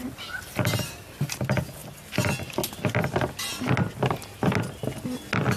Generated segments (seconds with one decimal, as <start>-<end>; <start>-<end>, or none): none